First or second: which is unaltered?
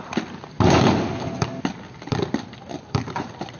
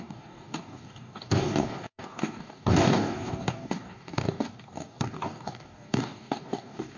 first